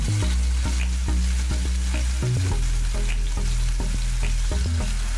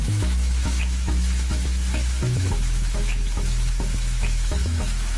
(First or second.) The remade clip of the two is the second